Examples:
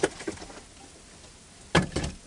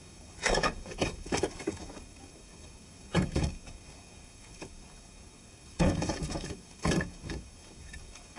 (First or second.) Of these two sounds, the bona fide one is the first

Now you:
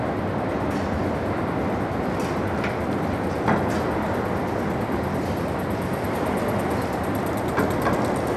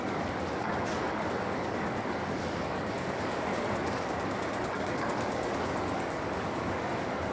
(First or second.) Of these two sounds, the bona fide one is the first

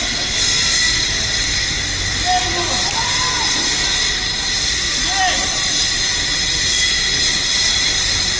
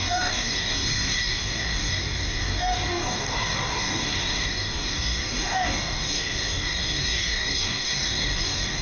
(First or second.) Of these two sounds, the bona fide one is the first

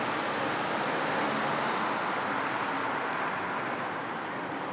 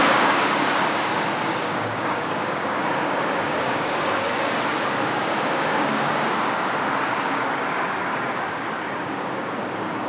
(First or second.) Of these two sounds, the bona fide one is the first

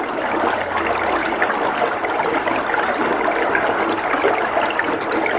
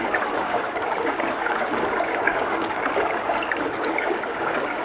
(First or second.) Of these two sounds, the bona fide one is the first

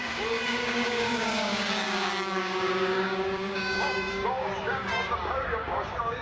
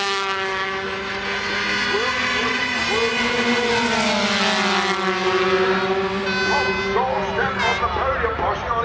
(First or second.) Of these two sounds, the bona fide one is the second